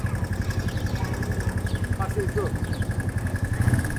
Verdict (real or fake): real